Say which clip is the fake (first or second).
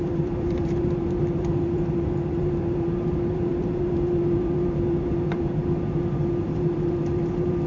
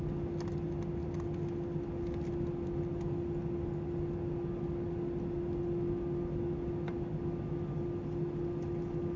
first